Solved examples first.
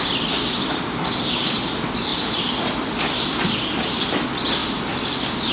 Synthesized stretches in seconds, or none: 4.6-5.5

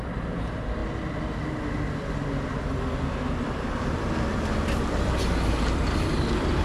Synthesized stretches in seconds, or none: 0.0-0.8; 3.1-6.6

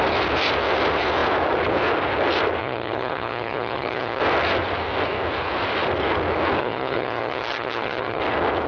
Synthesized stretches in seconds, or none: 2.6-4.2; 6.6-8.2